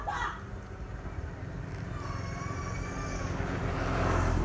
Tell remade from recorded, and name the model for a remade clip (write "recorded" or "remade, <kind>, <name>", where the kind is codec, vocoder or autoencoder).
recorded